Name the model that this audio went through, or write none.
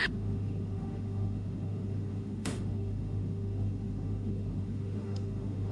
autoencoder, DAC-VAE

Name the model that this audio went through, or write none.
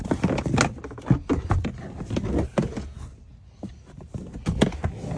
none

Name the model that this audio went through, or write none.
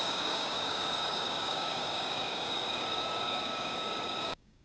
codec, DAC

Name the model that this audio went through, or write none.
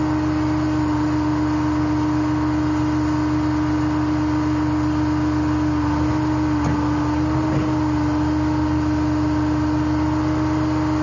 none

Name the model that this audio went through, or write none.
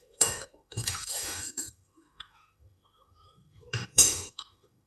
autoencoder, DAC-VAE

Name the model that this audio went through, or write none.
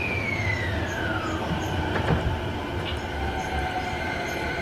none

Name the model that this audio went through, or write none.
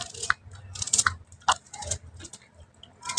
none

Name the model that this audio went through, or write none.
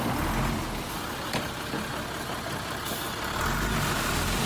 none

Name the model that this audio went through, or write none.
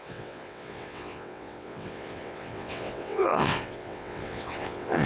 vocoder, WaveNeXt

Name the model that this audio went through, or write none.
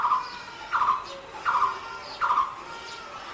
none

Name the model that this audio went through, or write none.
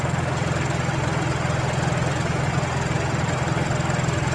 none